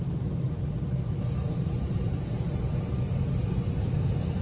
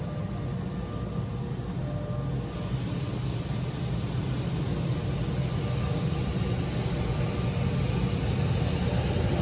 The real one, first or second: second